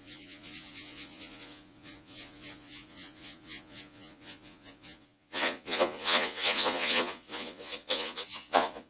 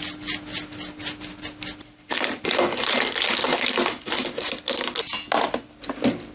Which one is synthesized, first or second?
first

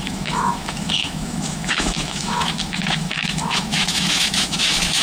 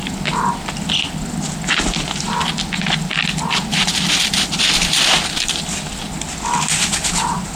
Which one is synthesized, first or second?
first